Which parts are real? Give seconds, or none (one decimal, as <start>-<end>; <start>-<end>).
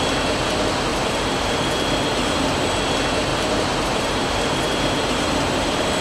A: 0.0-0.9; 1.5-3.3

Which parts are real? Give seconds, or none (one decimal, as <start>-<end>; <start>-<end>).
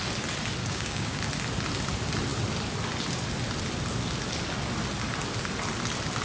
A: 0.0-0.6; 1.2-6.2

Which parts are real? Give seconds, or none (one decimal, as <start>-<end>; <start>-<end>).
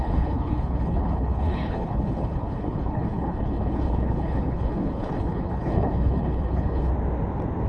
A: 6.9-7.7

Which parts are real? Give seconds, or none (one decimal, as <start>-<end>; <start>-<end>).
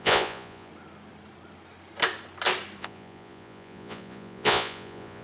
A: 0.7-2.8